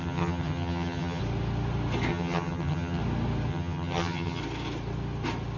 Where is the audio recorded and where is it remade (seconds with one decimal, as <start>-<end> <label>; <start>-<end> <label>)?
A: 0.0-1.2 remade; 1.2-2.1 recorded; 2.1-3.0 remade; 3.0-3.5 recorded; 3.5-4.4 remade; 4.4-5.6 recorded